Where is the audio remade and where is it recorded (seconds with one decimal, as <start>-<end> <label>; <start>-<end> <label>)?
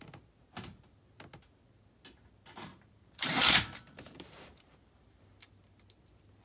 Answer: 0.0-2.7 recorded; 2.7-5.2 remade; 5.2-6.4 recorded